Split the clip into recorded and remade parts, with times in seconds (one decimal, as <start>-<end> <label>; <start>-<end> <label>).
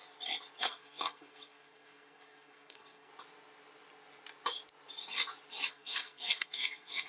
0.0-0.6 recorded; 0.6-3.1 remade; 3.1-5.7 recorded; 5.7-7.1 remade